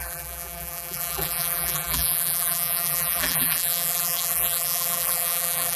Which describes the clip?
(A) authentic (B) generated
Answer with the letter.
B